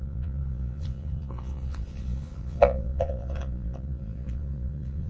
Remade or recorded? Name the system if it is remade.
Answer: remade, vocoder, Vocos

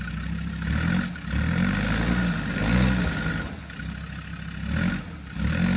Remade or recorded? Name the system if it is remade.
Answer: recorded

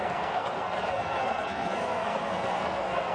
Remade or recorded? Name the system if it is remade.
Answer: remade, codec, SNAC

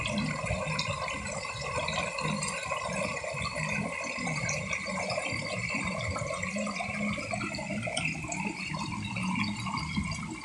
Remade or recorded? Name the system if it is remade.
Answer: recorded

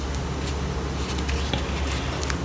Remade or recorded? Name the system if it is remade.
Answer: recorded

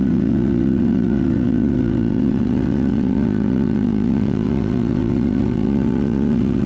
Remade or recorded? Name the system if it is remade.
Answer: remade, vocoder, WaveNeXt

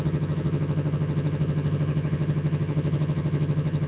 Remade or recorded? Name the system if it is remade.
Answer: remade, vocoder, HiFi-GAN